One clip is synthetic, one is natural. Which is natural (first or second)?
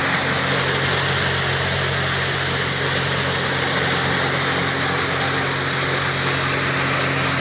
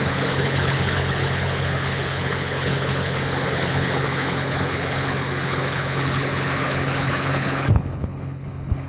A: first